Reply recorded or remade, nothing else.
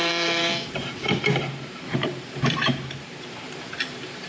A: remade